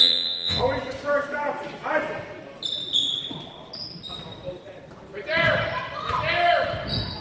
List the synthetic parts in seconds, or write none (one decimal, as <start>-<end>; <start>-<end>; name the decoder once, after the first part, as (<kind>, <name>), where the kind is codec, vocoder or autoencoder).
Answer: 0.0-0.6 (vocoder, WaveNeXt)

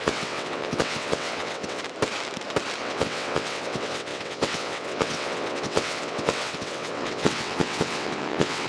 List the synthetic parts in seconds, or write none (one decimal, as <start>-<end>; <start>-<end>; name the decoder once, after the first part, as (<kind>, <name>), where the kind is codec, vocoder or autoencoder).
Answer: 0.0-1.8 (vocoder, WaveNeXt); 2.8-8.7

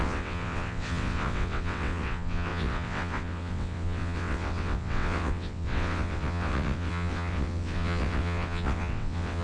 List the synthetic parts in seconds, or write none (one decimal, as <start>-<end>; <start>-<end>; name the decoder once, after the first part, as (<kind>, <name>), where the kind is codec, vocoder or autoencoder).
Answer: 0.0-9.4 (vocoder, WaveNeXt)

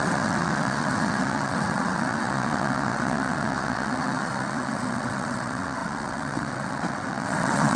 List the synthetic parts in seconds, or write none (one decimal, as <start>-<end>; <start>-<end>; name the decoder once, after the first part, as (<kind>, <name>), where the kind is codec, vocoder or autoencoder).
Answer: 0.0-7.8 (vocoder, WaveNeXt)

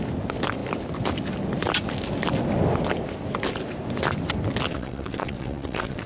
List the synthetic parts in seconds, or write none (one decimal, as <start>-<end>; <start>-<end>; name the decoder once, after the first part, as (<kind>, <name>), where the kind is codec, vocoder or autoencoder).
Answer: 4.7-6.1 (vocoder, WaveNeXt)

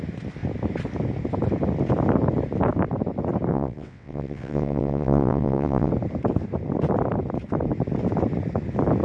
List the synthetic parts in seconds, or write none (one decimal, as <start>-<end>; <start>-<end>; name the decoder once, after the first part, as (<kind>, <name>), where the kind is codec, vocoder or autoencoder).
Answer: 3.5-5.9 (vocoder, WaveNeXt)

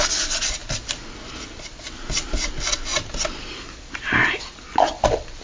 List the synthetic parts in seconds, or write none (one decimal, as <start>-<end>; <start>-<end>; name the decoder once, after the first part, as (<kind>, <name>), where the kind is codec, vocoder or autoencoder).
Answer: none